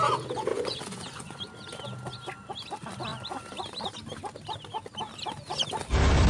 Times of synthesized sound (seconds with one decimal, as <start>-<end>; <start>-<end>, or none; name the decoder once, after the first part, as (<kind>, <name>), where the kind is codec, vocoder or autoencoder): 0.5-1.4 (vocoder, Vocos)